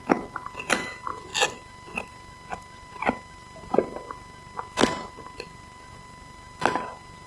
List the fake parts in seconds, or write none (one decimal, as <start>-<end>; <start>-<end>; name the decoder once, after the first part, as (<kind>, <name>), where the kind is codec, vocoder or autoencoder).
none